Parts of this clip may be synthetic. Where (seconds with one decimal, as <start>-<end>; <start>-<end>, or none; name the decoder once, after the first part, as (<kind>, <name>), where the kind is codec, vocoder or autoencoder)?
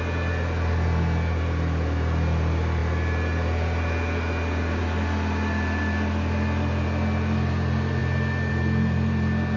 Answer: none